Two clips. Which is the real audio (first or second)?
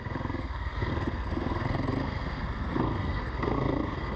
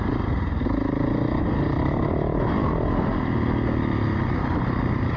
second